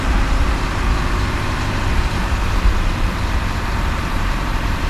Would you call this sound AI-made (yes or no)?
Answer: yes